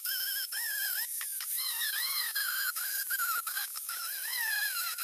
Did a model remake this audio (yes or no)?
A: yes